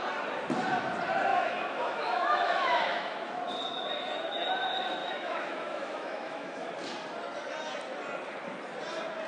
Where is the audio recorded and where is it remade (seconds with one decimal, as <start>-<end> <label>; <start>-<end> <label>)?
0.0-1.3 recorded; 1.3-3.3 remade; 3.3-5.0 recorded; 5.0-6.7 remade; 6.7-9.3 recorded